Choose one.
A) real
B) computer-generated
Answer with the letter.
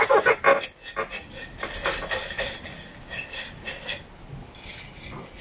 A